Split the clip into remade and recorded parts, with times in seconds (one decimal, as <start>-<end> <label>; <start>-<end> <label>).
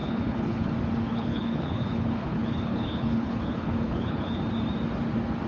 0.0-0.7 remade; 0.7-1.1 recorded; 1.1-4.4 remade; 4.4-5.5 recorded